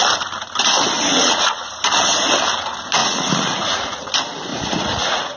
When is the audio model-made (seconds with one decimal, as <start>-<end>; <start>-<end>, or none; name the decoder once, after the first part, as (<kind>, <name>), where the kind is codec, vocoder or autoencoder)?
1.1-1.7 (vocoder, Vocos); 3.0-4.1; 4.5-5.4